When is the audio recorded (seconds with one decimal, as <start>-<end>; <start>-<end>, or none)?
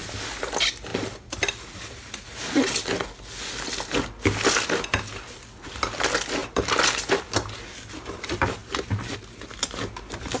0.0-10.4